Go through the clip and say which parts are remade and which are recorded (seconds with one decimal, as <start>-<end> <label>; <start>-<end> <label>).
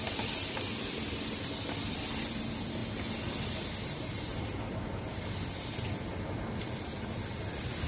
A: 0.0-2.8 remade; 2.8-3.4 recorded; 3.4-4.3 remade; 4.3-5.0 recorded; 5.0-7.9 remade